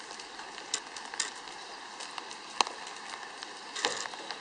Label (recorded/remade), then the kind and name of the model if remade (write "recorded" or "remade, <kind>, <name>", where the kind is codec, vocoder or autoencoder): recorded